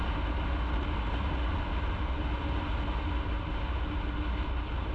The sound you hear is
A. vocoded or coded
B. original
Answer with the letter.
B